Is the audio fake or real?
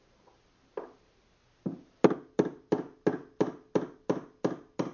real